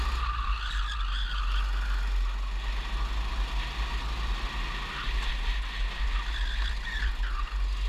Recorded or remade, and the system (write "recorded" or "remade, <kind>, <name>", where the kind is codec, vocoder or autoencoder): recorded